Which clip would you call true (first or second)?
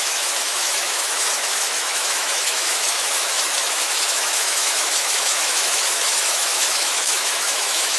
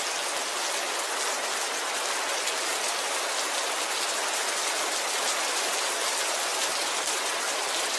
second